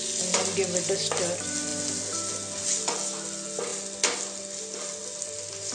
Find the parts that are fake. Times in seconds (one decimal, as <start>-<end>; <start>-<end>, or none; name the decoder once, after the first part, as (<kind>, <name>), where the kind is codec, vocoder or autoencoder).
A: none